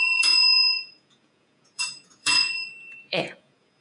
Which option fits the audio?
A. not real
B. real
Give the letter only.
A